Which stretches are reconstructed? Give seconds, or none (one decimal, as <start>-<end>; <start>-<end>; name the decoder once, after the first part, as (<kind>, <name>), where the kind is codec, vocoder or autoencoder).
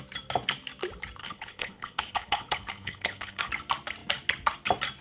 1.2-3.5 (codec, HILCodec)